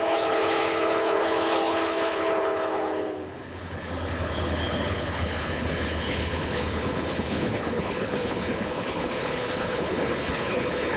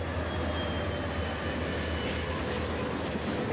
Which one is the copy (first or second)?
first